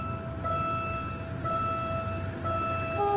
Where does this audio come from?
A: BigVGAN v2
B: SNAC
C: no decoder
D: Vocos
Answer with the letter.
C